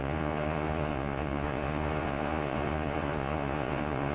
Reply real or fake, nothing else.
fake